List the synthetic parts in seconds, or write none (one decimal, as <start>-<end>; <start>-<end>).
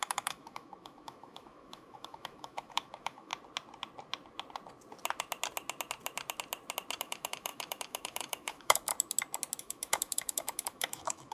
0.0-3.3; 7.0-8.9; 9.6-11.3